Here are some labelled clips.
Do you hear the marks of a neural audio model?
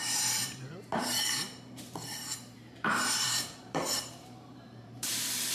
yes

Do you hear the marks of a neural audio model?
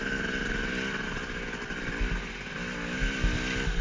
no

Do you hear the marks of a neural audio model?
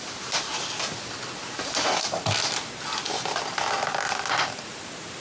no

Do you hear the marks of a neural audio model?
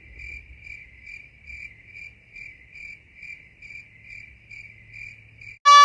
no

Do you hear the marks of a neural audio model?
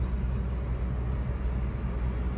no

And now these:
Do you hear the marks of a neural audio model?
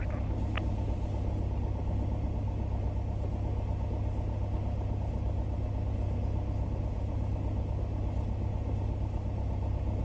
no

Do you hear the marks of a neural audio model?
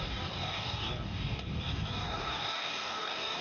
yes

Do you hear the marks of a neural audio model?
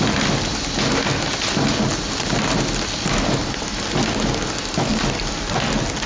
no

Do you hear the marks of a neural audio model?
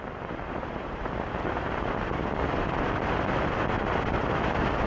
yes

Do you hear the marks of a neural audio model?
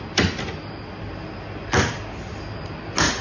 no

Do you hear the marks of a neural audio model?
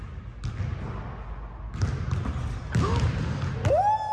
no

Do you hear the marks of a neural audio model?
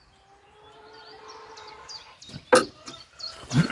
no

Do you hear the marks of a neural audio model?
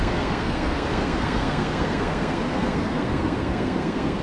yes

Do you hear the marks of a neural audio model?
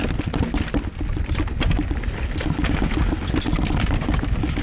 no